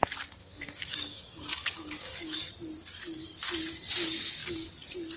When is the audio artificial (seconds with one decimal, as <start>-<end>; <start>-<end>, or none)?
0.4-2.5